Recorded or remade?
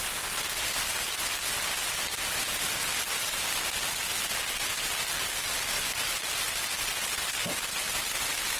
recorded